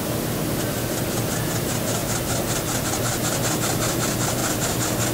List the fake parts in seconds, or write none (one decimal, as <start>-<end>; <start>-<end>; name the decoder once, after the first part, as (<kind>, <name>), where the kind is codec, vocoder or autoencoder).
none